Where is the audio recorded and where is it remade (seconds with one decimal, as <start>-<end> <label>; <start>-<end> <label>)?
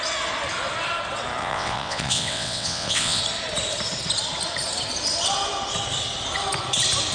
0.0-1.4 recorded; 1.4-3.2 remade; 3.2-7.1 recorded